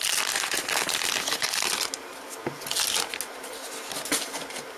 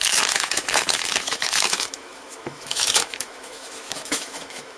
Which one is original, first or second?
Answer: first